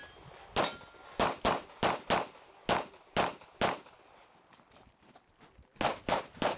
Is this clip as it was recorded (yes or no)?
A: yes